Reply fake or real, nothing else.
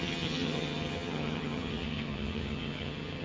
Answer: fake